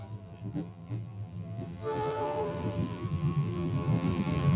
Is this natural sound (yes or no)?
no